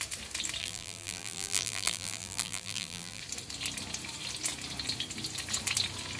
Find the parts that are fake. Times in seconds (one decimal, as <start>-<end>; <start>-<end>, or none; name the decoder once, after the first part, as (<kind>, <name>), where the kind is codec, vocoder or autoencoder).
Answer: 0.6-3.2 (vocoder, BigVGAN v2)